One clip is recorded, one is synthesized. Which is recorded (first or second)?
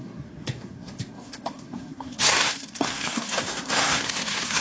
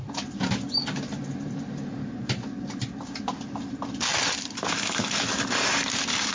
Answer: second